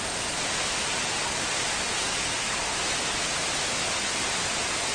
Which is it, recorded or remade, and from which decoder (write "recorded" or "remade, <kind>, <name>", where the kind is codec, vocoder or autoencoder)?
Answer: recorded